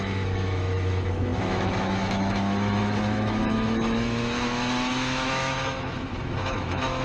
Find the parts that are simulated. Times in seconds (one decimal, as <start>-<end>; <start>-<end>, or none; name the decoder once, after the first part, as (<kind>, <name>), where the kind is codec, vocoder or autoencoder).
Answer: 0.0-7.0 (autoencoder, DAC-VAE)